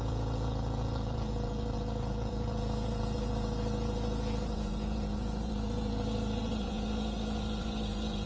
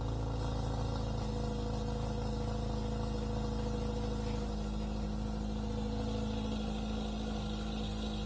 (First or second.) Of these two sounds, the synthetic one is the first